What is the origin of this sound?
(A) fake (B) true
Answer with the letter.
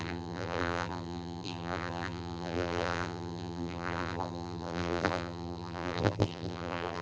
A